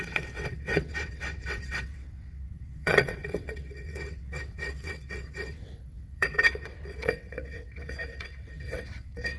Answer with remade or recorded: remade